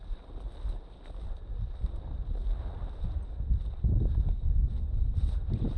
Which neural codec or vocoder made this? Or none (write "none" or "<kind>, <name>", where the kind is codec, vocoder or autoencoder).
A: none